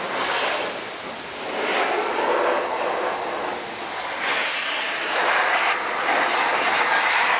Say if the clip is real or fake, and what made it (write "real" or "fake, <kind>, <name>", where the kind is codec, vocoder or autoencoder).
real